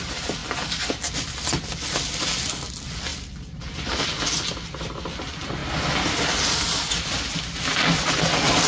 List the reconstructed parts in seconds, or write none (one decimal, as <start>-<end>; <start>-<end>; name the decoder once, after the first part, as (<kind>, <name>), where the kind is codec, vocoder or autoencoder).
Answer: none